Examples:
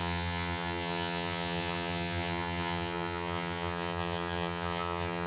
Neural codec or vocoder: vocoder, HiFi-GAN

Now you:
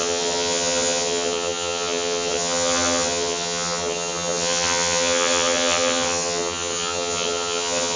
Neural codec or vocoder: vocoder, HiFi-GAN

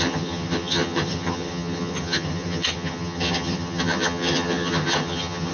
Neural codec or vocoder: vocoder, HiFi-GAN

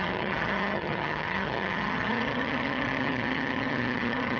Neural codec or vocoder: vocoder, HiFi-GAN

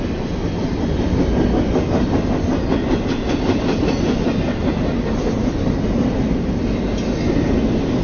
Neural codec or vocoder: none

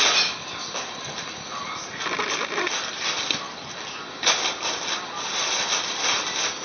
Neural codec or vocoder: none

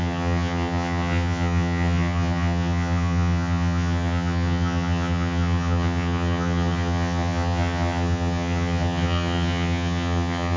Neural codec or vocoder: vocoder, HiFi-GAN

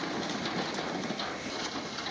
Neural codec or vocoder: none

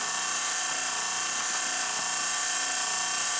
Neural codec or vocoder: none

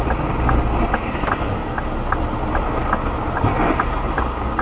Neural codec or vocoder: none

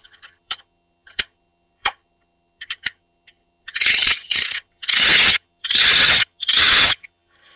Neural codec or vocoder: vocoder, HiFi-GAN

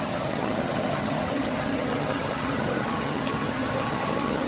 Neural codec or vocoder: vocoder, HiFi-GAN